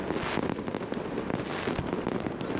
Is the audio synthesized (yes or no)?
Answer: no